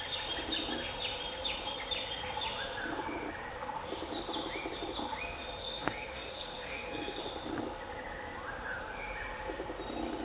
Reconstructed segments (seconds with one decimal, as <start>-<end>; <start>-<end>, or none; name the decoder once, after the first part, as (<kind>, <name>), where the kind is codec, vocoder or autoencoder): 5.6-7.2 (codec, SNAC)